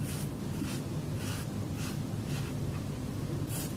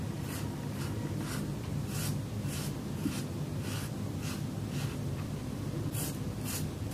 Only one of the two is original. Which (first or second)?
second